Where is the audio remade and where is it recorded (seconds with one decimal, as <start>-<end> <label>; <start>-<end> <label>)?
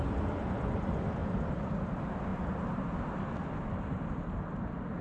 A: 0.0-1.2 recorded; 1.2-1.9 remade; 1.9-2.3 recorded; 2.3-3.1 remade; 3.1-5.0 recorded